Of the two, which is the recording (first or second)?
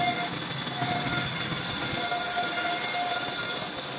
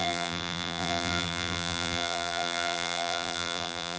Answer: first